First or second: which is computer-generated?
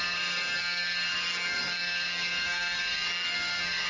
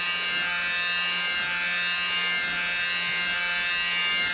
first